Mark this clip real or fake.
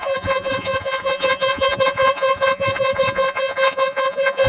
fake